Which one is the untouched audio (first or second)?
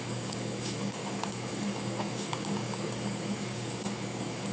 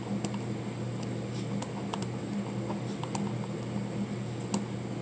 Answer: second